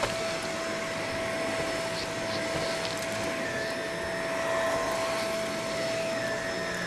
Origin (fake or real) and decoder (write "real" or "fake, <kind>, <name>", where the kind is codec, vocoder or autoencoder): real